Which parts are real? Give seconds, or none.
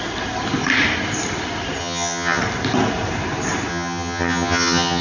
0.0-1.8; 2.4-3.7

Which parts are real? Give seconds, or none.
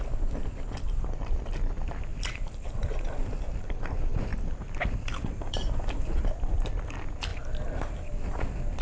0.0-2.1; 3.4-4.3; 6.7-8.8